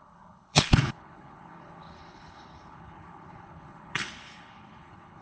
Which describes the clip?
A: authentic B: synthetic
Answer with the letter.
B